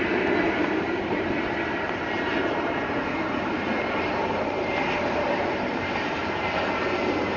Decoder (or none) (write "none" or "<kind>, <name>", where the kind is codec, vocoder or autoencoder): vocoder, BigVGAN v2